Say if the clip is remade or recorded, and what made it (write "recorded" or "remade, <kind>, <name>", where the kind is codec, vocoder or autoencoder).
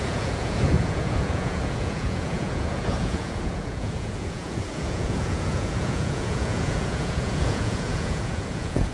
remade, vocoder, Vocos